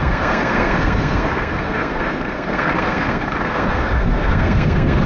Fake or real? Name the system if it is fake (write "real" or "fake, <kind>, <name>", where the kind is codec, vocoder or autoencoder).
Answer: fake, codec, SNAC